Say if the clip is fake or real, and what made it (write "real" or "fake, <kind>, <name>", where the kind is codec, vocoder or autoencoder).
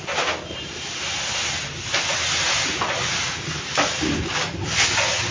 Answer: real